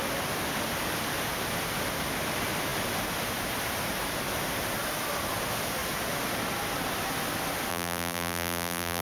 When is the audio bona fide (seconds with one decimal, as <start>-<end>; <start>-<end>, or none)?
0.0-7.7